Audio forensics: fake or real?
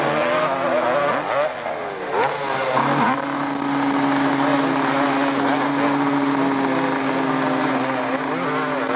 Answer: real